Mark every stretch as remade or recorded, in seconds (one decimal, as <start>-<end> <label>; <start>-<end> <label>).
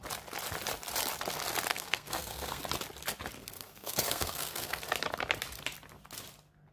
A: 0.0-1.7 recorded; 1.7-2.6 remade; 2.6-3.4 recorded; 3.4-4.8 remade; 4.8-6.7 recorded